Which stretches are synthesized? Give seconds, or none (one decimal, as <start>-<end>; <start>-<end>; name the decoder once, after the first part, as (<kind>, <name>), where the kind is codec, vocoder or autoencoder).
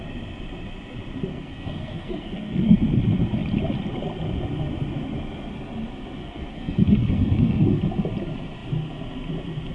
1.3-3.0 (codec, SNAC); 6.2-7.8